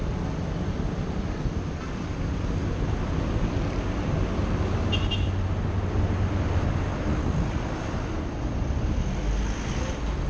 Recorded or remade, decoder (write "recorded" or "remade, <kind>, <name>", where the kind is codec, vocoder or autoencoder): recorded